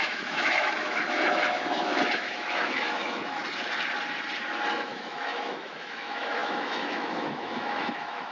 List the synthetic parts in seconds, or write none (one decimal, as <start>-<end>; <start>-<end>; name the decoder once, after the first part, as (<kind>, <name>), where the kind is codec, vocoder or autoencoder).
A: 0.0-3.4 (autoencoder, DAC-VAE); 4.7-8.3